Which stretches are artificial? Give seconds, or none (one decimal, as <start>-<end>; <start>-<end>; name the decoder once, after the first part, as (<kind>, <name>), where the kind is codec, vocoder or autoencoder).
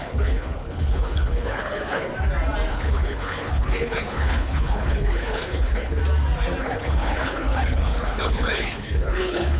0.0-2.1 (codec, HILCodec); 2.7-6.0; 6.6-9.6